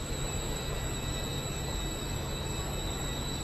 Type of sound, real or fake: real